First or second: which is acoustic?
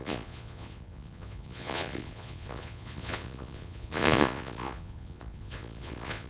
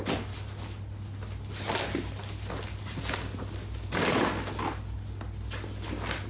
second